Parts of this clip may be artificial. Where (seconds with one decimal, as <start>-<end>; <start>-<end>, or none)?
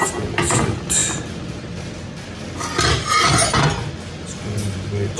none